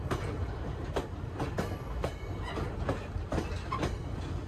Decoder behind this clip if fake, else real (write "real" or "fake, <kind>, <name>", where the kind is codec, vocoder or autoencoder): real